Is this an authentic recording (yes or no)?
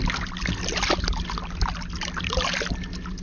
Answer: yes